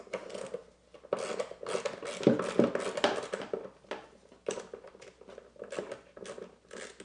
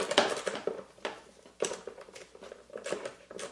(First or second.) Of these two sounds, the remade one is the second